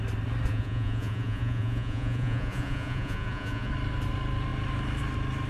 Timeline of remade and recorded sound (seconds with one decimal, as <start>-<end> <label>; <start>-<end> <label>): 0.0-0.5 recorded; 0.5-3.7 remade; 3.7-5.5 recorded